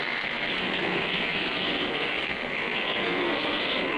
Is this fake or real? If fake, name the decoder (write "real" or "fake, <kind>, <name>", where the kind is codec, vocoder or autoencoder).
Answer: fake, codec, SNAC